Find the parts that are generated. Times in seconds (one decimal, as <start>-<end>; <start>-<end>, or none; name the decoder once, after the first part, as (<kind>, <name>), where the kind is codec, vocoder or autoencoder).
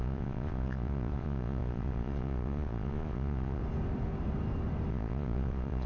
0.0-3.6 (vocoder, Vocos); 4.9-5.9